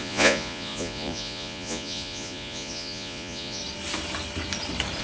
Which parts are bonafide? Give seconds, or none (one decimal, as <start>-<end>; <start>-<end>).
3.6-5.0